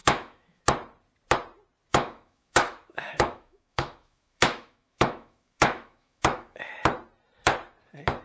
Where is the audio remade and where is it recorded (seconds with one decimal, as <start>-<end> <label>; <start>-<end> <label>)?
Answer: 0.0-0.6 remade; 0.6-1.9 recorded; 1.9-6.6 remade; 6.6-8.2 recorded